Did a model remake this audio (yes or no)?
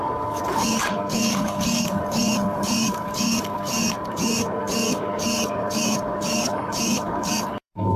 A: yes